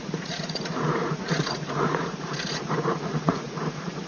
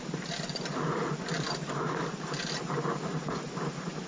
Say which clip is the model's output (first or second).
first